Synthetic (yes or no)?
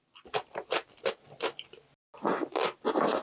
no